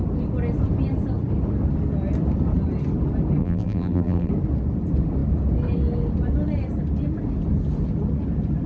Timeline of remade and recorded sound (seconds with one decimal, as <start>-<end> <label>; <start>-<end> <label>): 0.0-3.4 recorded; 3.4-4.3 remade; 4.3-8.7 recorded

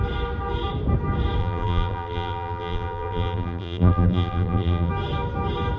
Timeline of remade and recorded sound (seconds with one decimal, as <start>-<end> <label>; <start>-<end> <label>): 0.0-1.4 recorded; 1.4-4.9 remade; 4.9-5.8 recorded

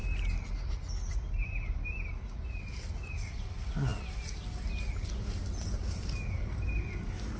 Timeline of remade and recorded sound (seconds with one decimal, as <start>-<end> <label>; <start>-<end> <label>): 0.0-7.4 recorded

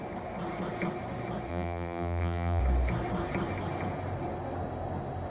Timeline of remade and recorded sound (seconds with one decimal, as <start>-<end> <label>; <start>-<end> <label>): 0.0-1.5 recorded; 1.5-2.6 remade; 2.6-5.3 recorded

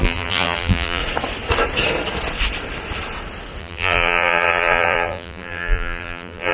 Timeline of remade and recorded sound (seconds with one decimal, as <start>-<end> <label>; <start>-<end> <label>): 0.0-1.0 remade; 1.0-3.6 recorded; 3.6-6.5 remade

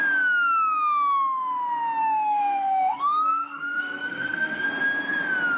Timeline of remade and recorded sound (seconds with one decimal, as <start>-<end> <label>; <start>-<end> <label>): 0.0-2.0 recorded; 2.0-4.7 remade; 4.7-5.6 recorded

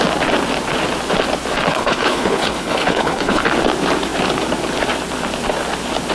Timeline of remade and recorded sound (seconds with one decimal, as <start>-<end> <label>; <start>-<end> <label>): 0.0-1.7 recorded; 1.7-3.4 remade; 3.4-6.1 recorded